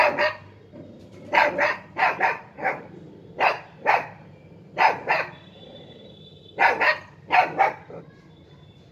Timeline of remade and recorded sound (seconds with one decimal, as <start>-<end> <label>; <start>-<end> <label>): 0.0-2.0 recorded; 2.0-6.4 remade; 6.4-8.9 recorded